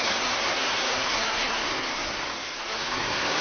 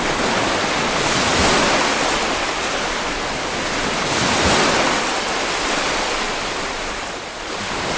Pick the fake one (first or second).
first